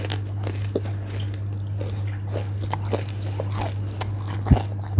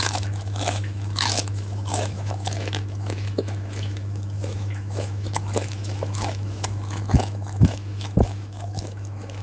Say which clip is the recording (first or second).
first